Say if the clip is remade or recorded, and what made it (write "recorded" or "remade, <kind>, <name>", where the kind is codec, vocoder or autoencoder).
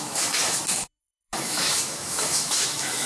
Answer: remade, autoencoder, DAC-VAE